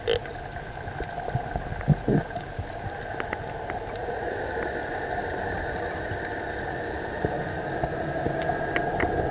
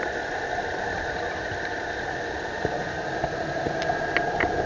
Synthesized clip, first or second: second